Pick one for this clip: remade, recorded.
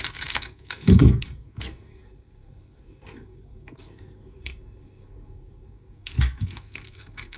remade